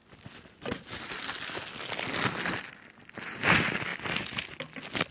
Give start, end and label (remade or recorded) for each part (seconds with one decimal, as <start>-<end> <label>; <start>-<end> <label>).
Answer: 0.0-5.1 recorded